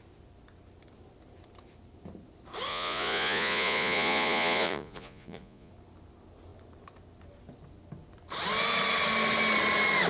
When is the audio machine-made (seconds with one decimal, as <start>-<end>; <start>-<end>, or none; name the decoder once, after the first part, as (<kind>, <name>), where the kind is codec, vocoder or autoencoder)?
2.7-5.7 (vocoder, Vocos)